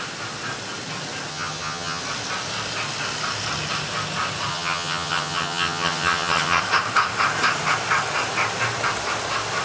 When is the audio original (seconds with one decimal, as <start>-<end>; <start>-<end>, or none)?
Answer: 0.0-1.3; 2.0-4.5; 6.6-9.6